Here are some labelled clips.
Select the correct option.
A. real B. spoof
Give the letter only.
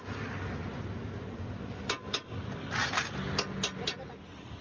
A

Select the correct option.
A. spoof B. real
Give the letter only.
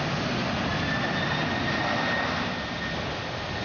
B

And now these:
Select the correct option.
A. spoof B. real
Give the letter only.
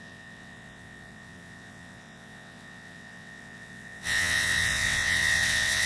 A